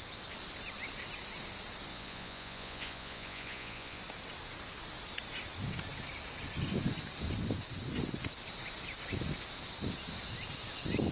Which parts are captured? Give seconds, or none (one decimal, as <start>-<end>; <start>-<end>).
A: 0.0-1.9; 4.0-11.1